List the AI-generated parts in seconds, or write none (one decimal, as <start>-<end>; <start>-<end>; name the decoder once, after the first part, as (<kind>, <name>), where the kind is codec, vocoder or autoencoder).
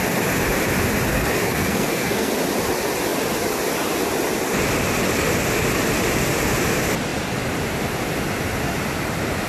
1.1-2.3 (codec, SNAC)